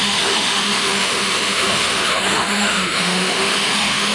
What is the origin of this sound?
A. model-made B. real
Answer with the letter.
A